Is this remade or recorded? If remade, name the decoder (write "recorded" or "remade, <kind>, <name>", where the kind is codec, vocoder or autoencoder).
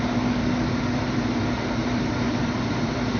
recorded